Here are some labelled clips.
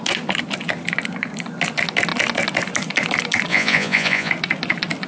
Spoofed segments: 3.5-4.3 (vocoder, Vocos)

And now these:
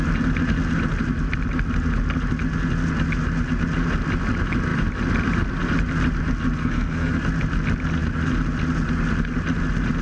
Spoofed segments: 6.6-7.1 (codec, SNAC)

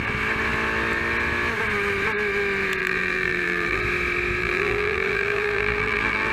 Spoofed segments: 2.8-3.8 (vocoder, BigVGAN v2); 4.4-6.3